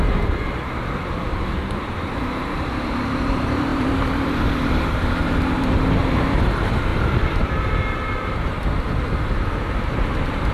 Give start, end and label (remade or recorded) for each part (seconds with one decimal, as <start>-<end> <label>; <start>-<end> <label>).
0.0-10.5 remade